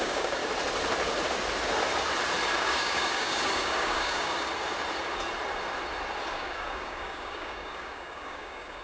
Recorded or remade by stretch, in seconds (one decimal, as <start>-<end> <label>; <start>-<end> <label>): 0.0-0.4 remade; 0.4-2.5 recorded; 2.5-4.5 remade; 4.5-6.3 recorded; 6.3-8.8 remade